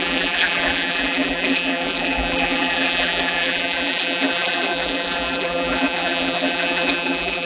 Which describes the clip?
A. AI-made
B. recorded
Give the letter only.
A